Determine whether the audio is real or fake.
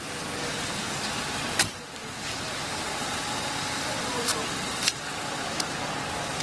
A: real